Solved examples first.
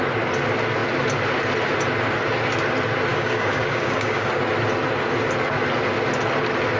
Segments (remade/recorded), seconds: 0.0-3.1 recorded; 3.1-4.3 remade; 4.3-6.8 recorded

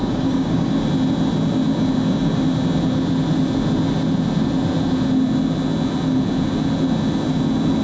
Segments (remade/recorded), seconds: 0.0-0.7 remade; 0.7-7.8 recorded

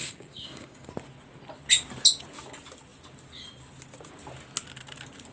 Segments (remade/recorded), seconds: 0.0-0.9 remade; 0.9-5.3 recorded

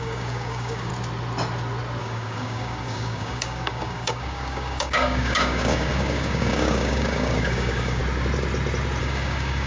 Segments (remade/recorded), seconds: 0.0-0.9 remade; 0.9-2.0 recorded; 2.0-8.0 remade; 8.0-9.0 recorded; 9.0-9.7 remade

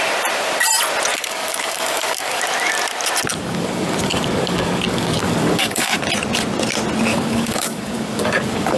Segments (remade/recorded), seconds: 0.0-1.1 recorded; 1.1-2.4 remade; 2.4-3.3 recorded; 3.3-6.0 remade; 6.0-7.1 recorded; 7.1-8.8 remade

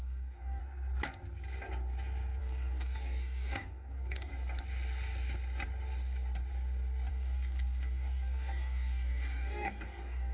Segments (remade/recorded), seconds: 0.0-0.6 remade; 0.6-2.4 recorded; 2.4-4.3 remade; 4.3-7.1 recorded; 7.1-10.3 remade

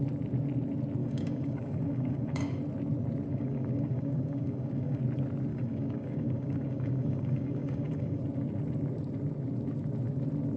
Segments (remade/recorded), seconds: 0.0-1.0 recorded; 1.0-2.6 remade; 2.6-3.3 recorded; 3.3-5.0 remade; 5.0-5.5 recorded; 5.5-8.2 remade; 8.2-10.6 recorded

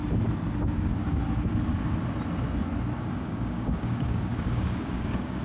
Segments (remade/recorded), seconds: 0.0-0.6 recorded; 0.6-1.2 remade; 1.2-3.0 recorded; 3.0-5.4 remade